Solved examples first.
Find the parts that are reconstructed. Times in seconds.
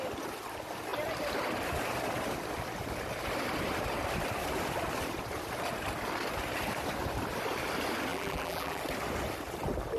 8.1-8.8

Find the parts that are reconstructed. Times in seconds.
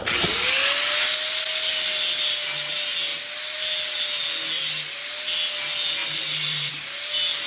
6.0-6.7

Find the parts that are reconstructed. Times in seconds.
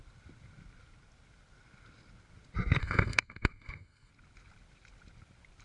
2.8-4.1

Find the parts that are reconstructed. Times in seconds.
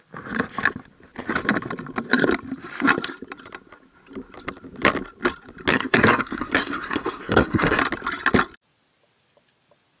5.7-7.8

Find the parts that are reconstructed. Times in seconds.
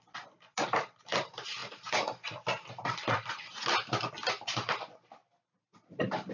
none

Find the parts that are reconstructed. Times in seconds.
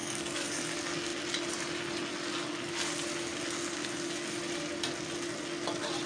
0.0-0.6